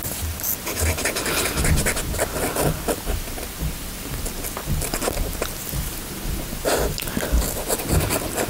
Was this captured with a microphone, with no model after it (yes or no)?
yes